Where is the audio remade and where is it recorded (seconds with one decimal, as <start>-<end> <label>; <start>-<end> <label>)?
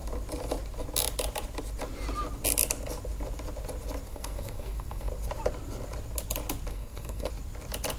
0.0-4.1 recorded; 4.1-5.1 remade; 5.1-6.7 recorded; 6.7-7.3 remade; 7.3-8.0 recorded